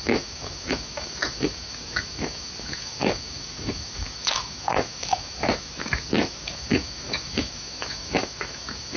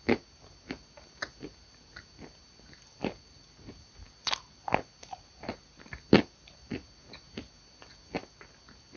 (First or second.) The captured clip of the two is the second